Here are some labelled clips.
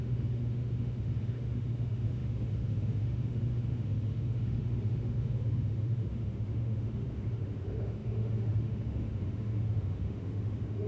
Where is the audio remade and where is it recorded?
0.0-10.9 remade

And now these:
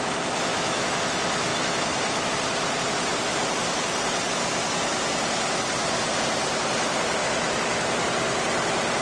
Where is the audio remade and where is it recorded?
0.0-0.5 recorded; 0.5-1.0 remade; 1.0-1.5 recorded; 1.5-2.3 remade; 2.3-7.2 recorded; 7.2-7.8 remade; 7.8-9.0 recorded

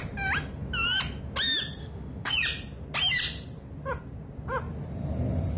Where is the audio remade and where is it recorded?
0.0-1.8 recorded; 1.8-2.3 remade; 2.3-5.6 recorded

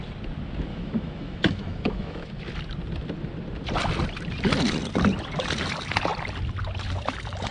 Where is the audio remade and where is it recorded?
0.0-0.7 recorded; 0.7-2.3 remade; 2.3-7.5 recorded

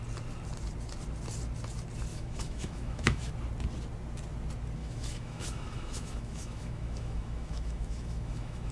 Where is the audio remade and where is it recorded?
0.0-2.1 recorded; 2.1-3.3 remade; 3.3-4.8 recorded; 4.8-8.7 remade